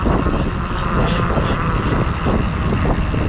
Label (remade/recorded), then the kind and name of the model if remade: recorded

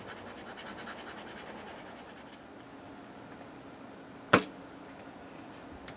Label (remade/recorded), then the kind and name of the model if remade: recorded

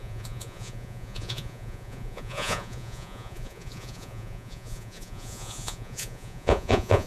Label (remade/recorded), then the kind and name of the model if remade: remade, vocoder, Vocos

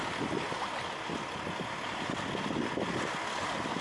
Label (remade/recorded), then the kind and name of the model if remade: recorded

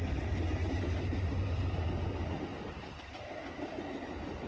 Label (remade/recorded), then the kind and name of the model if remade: recorded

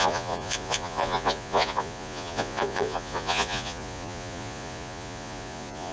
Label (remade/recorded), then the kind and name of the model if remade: remade, vocoder, Vocos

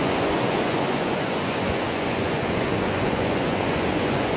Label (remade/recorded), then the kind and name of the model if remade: remade, vocoder, Vocos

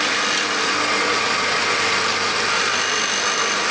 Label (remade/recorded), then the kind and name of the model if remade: recorded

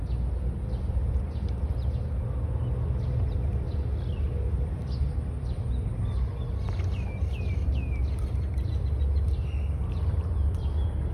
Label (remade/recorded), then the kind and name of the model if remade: recorded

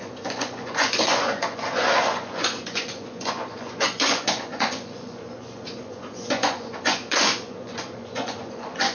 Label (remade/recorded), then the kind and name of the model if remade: remade, vocoder, Vocos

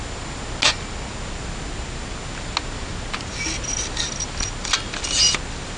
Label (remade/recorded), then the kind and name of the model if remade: recorded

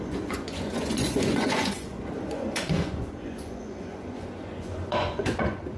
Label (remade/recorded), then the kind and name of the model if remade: remade, vocoder, Vocos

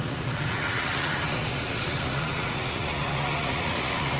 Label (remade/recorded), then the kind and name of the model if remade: remade, vocoder, Vocos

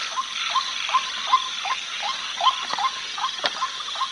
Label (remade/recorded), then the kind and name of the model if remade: recorded